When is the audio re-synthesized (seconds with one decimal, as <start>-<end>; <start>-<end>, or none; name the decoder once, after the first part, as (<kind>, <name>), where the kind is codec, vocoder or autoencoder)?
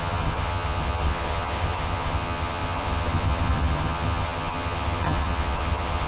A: 0.0-6.1 (vocoder, HiFi-GAN)